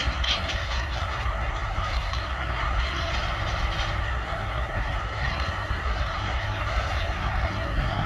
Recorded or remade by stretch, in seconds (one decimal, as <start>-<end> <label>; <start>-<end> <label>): 0.0-3.1 remade; 3.1-4.0 recorded; 4.0-8.1 remade